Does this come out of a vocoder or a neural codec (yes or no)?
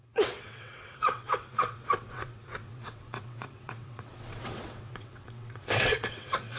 yes